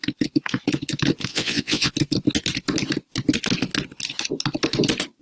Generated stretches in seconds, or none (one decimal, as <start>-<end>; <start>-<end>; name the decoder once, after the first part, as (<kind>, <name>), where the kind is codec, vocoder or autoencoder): 1.3-1.9 (vocoder, Vocos)